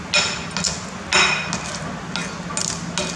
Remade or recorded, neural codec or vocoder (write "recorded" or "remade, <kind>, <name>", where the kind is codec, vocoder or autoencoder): recorded